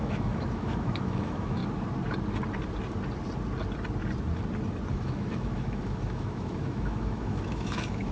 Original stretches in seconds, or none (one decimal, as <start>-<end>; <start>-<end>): 1.6-4.9